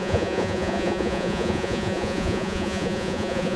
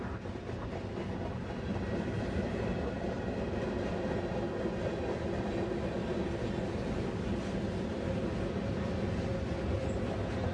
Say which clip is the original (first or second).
second